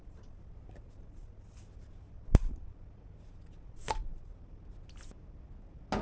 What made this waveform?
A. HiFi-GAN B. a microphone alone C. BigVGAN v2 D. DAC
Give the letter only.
B